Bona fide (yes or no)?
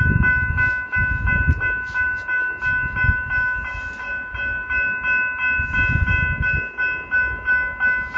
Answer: yes